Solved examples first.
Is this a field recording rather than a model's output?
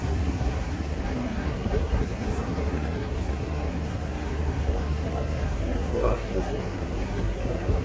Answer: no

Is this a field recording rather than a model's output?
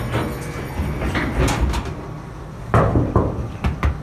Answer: yes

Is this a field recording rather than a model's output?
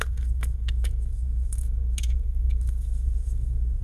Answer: no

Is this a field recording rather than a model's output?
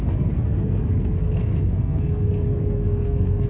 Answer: no